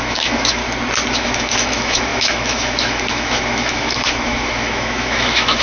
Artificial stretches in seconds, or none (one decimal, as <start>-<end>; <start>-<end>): 0.0-0.6; 1.1-5.6